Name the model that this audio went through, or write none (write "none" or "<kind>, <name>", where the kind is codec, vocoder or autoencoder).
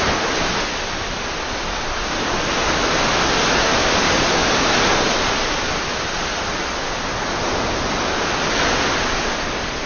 none